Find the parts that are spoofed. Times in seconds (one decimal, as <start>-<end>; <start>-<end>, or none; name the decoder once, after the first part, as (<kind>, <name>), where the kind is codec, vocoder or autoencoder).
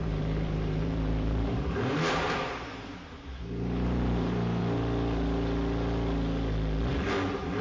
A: 0.0-4.6 (vocoder, BigVGAN v2)